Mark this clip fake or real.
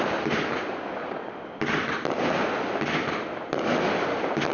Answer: real